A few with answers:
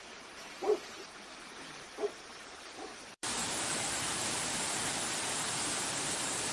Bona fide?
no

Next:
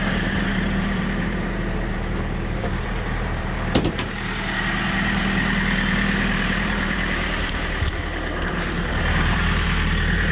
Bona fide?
no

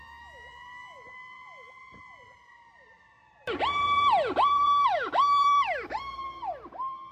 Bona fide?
no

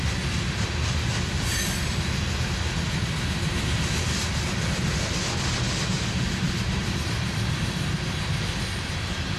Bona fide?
yes